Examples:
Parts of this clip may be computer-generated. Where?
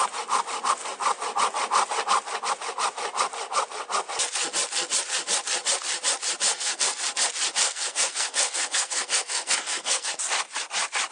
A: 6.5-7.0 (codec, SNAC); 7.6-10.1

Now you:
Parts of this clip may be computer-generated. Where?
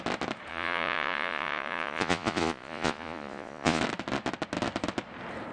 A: 0.5-3.8 (vocoder, Vocos)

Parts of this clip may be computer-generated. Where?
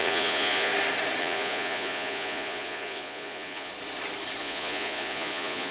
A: 0.0-0.7 (vocoder, Vocos); 1.2-3.7; 4.4-5.7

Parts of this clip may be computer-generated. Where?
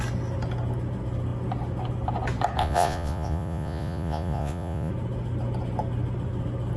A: 2.6-4.9 (vocoder, Vocos)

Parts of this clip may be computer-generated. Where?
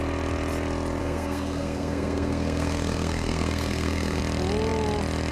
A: 1.0-4.2 (codec, SNAC)